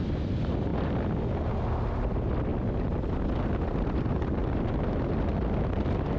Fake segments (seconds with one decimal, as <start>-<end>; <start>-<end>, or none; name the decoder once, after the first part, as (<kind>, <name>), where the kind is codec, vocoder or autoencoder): none